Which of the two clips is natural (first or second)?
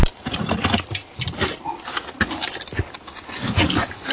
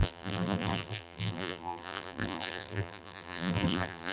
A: first